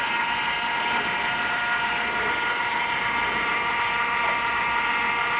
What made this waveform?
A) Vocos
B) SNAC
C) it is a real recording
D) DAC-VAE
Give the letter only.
C